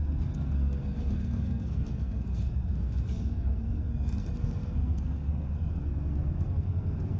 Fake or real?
fake